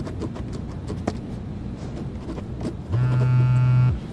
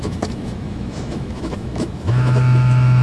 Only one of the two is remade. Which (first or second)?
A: second